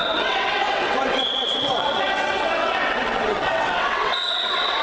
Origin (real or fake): fake